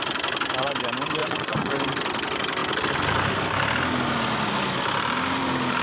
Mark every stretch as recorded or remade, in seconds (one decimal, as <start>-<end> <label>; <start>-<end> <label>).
0.0-1.2 recorded; 1.2-1.7 remade; 1.7-5.8 recorded